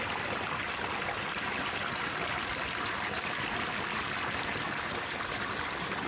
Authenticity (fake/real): real